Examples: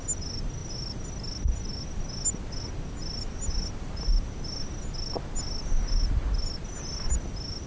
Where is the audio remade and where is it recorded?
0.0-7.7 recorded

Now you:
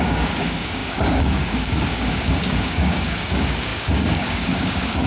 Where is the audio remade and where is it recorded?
0.0-5.1 remade

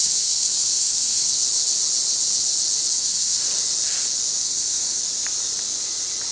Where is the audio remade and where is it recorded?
0.0-1.3 remade; 1.3-2.9 recorded; 2.9-3.4 remade; 3.4-4.4 recorded; 4.4-5.0 remade; 5.0-6.3 recorded

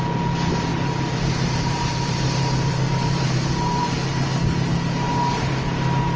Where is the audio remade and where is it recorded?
0.0-0.7 recorded; 0.7-4.4 remade; 4.4-6.2 recorded

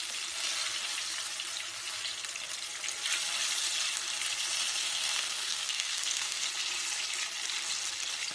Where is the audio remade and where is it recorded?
0.0-4.8 recorded; 4.8-6.5 remade; 6.5-8.3 recorded